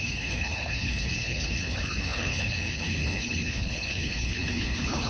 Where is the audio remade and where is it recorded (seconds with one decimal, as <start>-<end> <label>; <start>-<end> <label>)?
0.0-5.1 remade

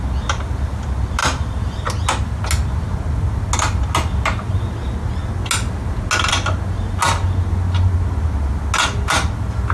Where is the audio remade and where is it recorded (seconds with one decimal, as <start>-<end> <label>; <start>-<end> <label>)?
0.0-9.7 recorded